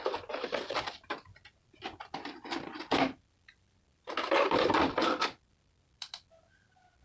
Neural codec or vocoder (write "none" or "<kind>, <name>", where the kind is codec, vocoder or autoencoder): vocoder, BigVGAN v2